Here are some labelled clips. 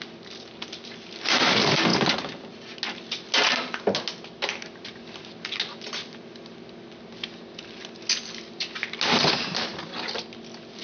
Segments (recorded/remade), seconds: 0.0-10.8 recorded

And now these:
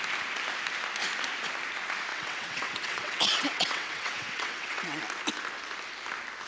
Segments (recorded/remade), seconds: 0.0-2.1 recorded; 2.1-5.0 remade; 5.0-6.5 recorded

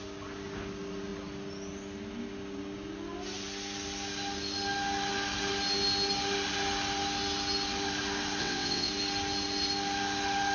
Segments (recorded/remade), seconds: 0.0-8.4 recorded; 8.4-8.9 remade; 8.9-10.5 recorded

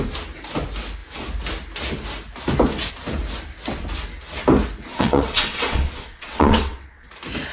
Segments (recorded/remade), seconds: 0.0-4.9 recorded; 4.9-7.1 remade; 7.1-7.5 recorded